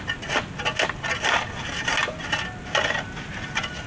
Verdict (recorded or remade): recorded